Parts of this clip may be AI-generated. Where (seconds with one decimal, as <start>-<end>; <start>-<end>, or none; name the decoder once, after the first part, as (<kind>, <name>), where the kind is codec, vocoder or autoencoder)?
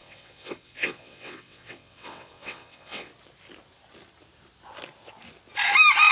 0.0-3.1 (vocoder, WaveNeXt)